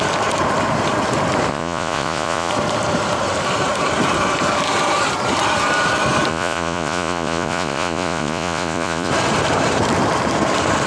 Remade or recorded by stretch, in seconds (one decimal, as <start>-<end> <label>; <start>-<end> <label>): 0.0-1.5 recorded; 1.5-2.5 remade; 2.5-6.3 recorded; 6.3-9.1 remade; 9.1-10.9 recorded